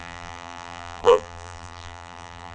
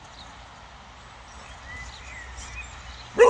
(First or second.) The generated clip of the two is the first